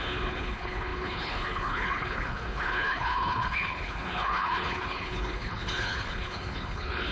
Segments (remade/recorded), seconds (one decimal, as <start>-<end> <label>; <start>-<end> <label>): 0.0-7.1 remade